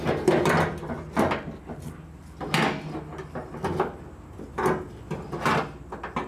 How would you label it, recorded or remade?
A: recorded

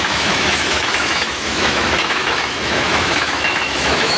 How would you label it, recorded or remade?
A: remade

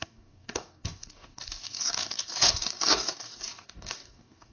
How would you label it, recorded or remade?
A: remade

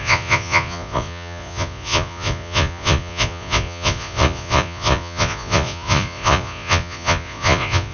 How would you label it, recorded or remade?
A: remade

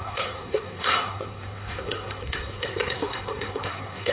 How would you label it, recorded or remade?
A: remade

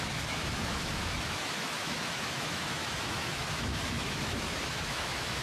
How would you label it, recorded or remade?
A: remade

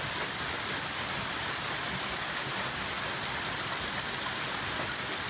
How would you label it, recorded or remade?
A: recorded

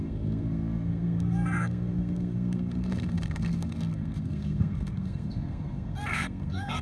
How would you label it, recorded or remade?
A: remade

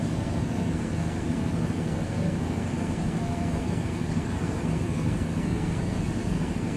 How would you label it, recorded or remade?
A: remade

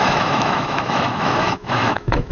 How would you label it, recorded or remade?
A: remade